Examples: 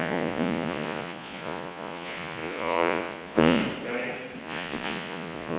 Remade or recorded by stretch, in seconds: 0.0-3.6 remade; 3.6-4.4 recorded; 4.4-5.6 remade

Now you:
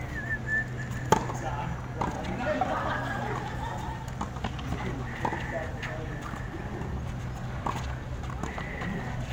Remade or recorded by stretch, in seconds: 0.0-9.3 recorded

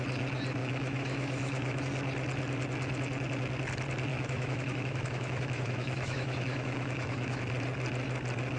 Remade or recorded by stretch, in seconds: 0.0-0.6 recorded; 0.6-1.8 remade; 1.8-4.1 recorded; 4.1-7.4 remade; 7.4-8.6 recorded

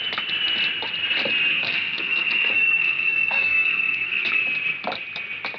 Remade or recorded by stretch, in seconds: 0.0-1.5 recorded; 1.5-4.4 remade; 4.4-5.6 recorded